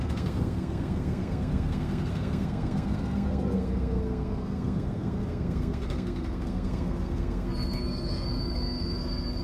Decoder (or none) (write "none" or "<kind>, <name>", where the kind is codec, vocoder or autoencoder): codec, SNAC